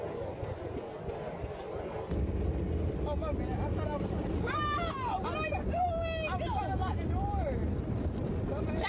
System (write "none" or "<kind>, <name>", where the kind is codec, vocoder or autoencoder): none